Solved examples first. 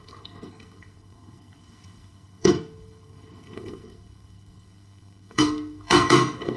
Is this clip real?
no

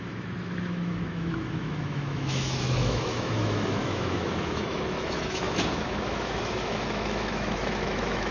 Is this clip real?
no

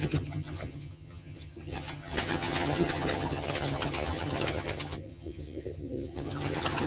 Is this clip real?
no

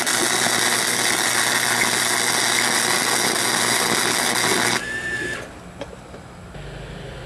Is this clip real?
yes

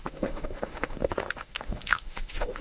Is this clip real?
no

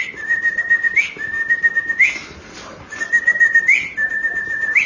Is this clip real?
no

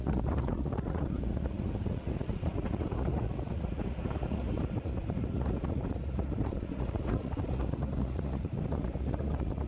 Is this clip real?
no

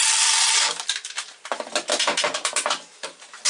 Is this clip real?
yes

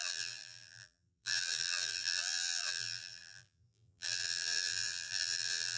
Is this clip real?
no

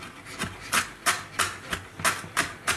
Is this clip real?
yes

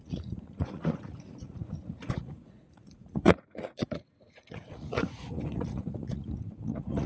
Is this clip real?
no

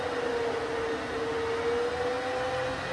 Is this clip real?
yes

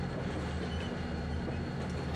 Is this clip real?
yes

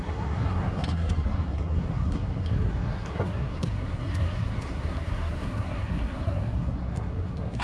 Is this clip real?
no